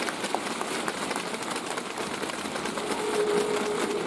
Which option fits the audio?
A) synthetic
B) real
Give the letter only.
B